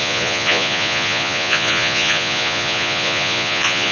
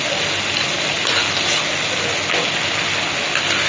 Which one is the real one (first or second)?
second